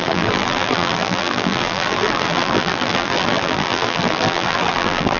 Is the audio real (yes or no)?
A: no